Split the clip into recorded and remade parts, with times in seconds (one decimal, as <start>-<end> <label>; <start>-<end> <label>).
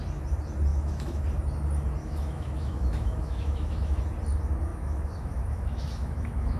0.0-0.7 recorded; 0.7-1.2 remade; 1.2-2.0 recorded; 2.0-4.0 remade; 4.0-4.7 recorded; 4.7-6.6 remade